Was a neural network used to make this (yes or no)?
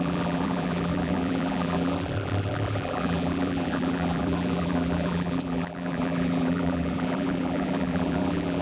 yes